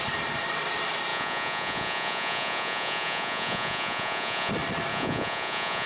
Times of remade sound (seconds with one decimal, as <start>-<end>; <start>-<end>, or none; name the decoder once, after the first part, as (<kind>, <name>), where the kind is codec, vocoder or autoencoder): 1.1-4.5 (vocoder, Vocos); 4.9-5.9

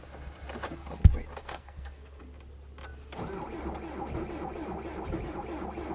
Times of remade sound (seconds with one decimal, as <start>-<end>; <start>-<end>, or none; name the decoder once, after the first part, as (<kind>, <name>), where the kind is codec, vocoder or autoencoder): 1.4-2.2 (codec, SNAC)

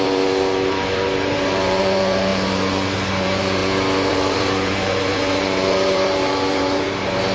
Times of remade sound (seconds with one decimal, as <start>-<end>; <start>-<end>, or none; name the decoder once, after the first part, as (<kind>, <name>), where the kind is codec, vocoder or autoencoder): 0.0-3.6 (vocoder, BigVGAN v2); 4.1-7.3